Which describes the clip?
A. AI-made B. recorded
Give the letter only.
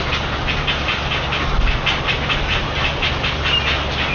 B